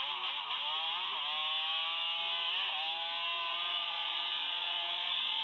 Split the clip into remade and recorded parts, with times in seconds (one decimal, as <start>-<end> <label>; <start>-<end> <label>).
0.0-3.5 recorded; 3.5-5.4 remade